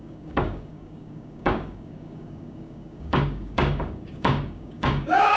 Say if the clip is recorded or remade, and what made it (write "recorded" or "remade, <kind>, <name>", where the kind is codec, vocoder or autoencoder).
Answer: remade, codec, DAC